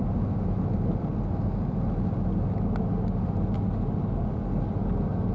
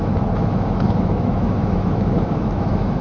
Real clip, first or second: first